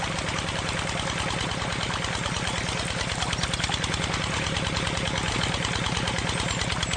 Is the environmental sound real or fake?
real